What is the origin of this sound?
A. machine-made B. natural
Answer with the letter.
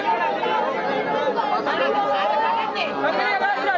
B